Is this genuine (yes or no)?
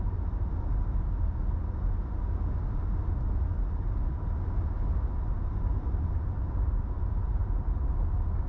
yes